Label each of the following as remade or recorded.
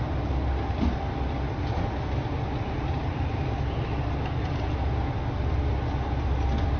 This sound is recorded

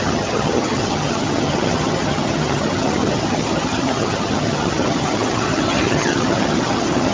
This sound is remade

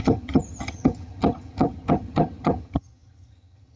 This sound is remade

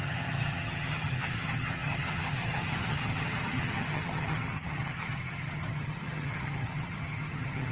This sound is remade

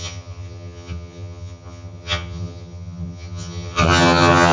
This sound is remade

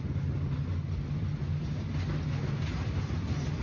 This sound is recorded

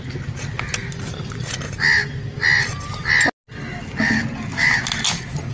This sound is recorded